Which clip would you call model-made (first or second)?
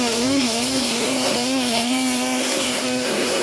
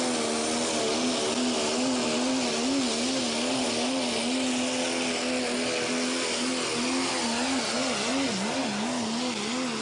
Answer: first